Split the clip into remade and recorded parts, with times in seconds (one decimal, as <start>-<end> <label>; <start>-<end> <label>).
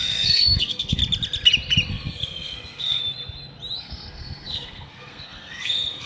0.0-1.0 remade; 1.0-1.9 recorded; 1.9-3.0 remade; 3.0-3.8 recorded; 3.8-6.1 remade